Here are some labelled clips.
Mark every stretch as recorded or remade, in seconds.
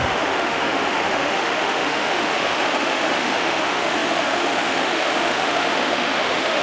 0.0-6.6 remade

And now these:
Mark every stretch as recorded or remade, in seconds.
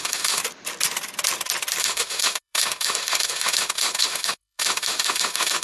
0.0-0.4 remade; 0.4-1.8 recorded; 1.8-5.6 remade